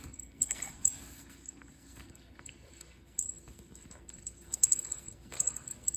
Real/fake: fake